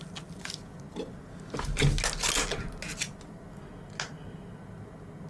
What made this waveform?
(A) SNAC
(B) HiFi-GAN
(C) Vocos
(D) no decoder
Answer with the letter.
D